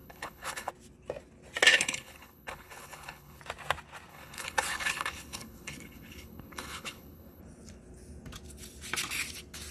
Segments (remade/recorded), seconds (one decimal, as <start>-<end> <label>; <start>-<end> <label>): 0.0-0.7 remade; 0.7-1.7 recorded; 1.7-3.4 remade; 3.4-4.1 recorded; 4.1-7.4 remade; 7.4-9.7 recorded